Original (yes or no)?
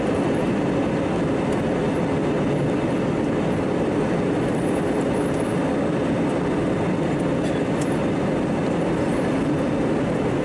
yes